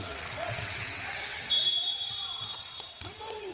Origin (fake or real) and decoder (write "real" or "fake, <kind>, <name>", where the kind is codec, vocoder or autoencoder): fake, vocoder, WaveNeXt